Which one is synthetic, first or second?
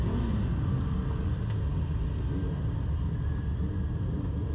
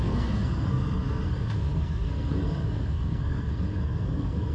second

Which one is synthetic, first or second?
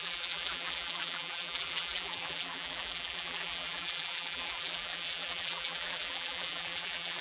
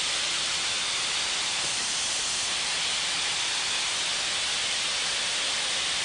first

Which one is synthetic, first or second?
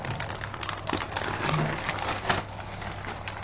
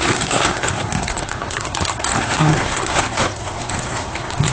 second